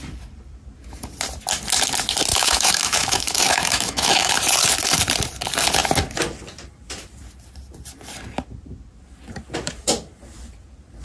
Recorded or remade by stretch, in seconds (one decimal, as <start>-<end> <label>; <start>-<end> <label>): 0.0-2.3 recorded; 2.3-4.3 remade; 4.3-11.0 recorded